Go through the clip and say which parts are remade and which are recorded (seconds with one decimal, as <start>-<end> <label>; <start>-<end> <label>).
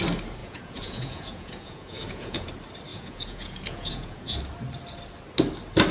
0.0-0.4 recorded; 0.4-2.5 remade; 2.5-2.9 recorded; 2.9-4.4 remade; 4.4-5.9 recorded